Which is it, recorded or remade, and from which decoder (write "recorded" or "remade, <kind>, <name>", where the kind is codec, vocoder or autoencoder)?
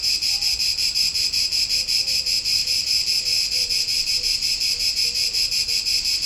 remade, vocoder, BigVGAN v2